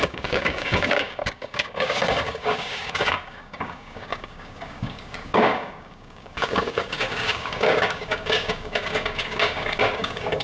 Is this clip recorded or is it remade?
remade